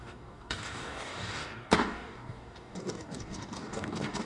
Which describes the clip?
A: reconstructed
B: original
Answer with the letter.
A